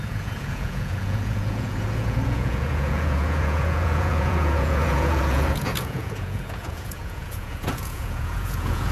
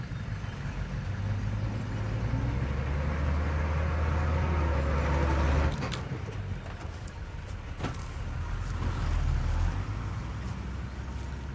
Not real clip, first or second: first